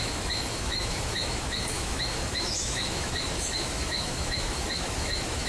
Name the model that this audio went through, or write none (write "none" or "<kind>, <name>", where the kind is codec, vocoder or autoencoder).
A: autoencoder, DAC-VAE